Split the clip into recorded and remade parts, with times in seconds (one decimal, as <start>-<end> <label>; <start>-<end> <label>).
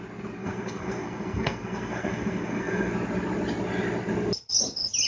0.0-0.4 recorded; 0.4-2.9 remade; 2.9-5.1 recorded